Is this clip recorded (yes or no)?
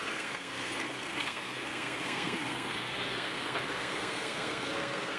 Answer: no